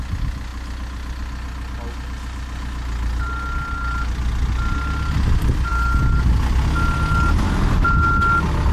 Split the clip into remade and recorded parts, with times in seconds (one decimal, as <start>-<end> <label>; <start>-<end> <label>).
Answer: 0.0-8.7 recorded